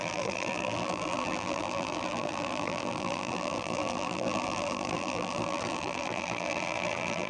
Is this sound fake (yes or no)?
yes